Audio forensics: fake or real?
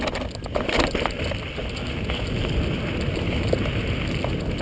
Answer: real